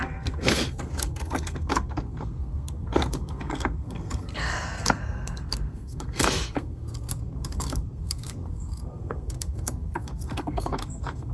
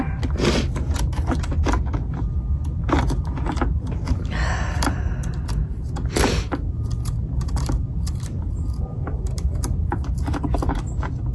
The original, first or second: second